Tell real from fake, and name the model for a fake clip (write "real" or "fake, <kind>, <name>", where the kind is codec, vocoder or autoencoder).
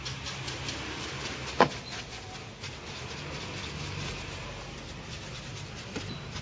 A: real